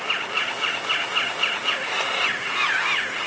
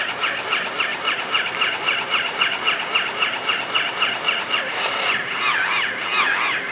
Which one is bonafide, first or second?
first